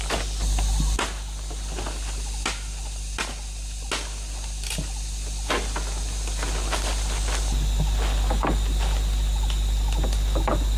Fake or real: real